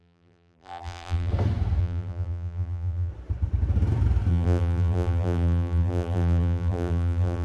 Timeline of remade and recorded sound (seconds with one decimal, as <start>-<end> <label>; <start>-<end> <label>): 0.0-1.3 remade; 1.3-1.8 recorded; 1.8-3.1 remade; 3.1-4.3 recorded; 4.3-7.4 remade